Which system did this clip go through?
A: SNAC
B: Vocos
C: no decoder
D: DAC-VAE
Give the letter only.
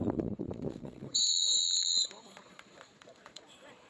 B